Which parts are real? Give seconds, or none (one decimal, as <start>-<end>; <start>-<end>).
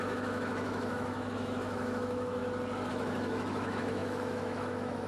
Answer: 2.4-2.9